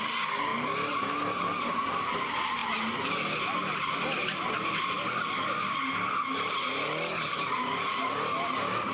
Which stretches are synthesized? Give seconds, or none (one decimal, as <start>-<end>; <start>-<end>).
none